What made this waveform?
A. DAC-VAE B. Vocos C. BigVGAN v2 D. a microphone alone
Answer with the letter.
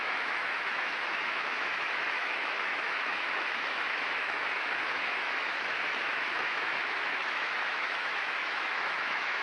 A